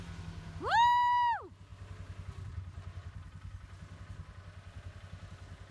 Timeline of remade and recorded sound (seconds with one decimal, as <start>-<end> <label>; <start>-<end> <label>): 0.0-5.7 recorded